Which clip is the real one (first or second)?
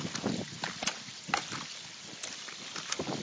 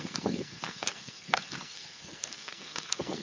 first